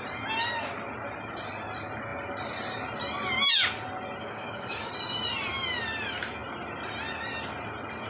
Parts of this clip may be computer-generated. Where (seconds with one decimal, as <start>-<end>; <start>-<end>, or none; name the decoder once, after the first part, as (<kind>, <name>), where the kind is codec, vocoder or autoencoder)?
4.2-4.9 (codec, DAC)